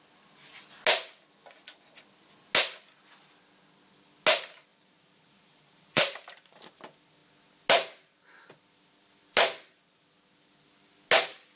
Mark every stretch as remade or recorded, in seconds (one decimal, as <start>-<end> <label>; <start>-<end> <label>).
0.0-4.7 recorded; 4.7-6.7 remade; 6.7-11.6 recorded